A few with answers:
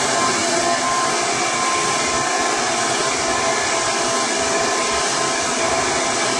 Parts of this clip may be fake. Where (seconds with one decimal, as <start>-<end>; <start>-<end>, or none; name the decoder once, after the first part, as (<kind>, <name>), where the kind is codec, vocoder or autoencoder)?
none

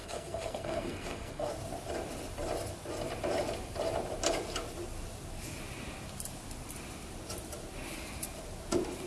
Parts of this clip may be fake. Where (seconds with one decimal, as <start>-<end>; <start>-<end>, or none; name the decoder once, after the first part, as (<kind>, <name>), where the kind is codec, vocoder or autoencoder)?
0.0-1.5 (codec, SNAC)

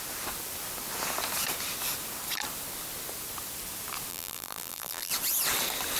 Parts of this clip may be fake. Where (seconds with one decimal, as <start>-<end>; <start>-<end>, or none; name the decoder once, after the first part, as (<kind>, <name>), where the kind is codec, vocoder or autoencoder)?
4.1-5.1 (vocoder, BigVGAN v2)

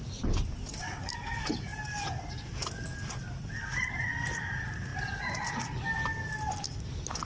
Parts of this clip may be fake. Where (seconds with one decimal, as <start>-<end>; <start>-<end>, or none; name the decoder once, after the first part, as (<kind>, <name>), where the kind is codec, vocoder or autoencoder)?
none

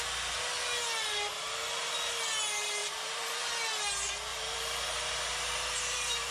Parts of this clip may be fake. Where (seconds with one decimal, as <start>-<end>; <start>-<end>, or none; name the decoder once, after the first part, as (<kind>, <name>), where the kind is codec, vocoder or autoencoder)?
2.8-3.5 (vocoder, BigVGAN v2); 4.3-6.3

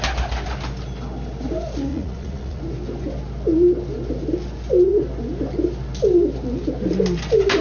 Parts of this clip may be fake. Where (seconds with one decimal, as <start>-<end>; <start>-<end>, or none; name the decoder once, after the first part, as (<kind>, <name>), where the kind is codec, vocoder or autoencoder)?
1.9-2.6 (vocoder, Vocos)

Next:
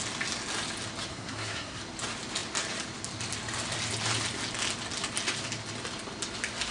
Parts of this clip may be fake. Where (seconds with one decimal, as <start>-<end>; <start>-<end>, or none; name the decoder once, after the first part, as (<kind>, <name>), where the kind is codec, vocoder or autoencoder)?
1.1-1.8 (codec, SNAC)

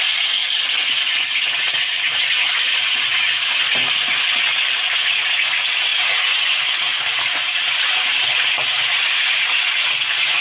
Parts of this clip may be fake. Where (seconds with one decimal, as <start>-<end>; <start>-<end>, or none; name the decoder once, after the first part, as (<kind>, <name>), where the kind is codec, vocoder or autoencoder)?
0.0-0.4 (vocoder, Vocos); 1.1-3.8; 5.0-10.4